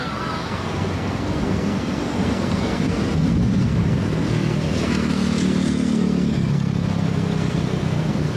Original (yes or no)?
no